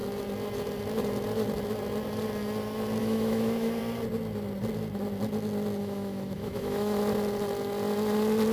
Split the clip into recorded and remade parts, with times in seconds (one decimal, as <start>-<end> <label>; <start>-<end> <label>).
0.0-3.0 recorded; 3.0-3.8 remade; 3.8-5.8 recorded; 5.8-7.0 remade; 7.0-8.5 recorded